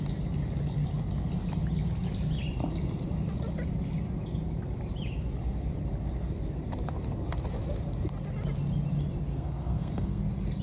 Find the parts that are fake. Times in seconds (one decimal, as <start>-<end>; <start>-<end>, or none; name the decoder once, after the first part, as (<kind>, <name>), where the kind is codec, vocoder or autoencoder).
9.3-10.2 (codec, SNAC)